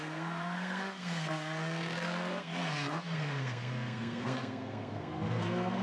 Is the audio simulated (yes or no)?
yes